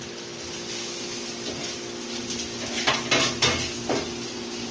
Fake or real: real